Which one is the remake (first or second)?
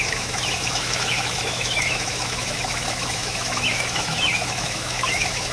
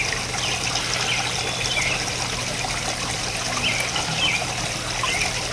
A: first